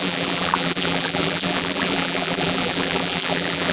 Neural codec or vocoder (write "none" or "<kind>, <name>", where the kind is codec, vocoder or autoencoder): vocoder, BigVGAN v2